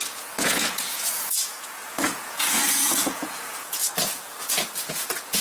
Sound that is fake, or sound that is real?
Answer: fake